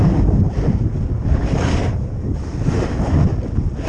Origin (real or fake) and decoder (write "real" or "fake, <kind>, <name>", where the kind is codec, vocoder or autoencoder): real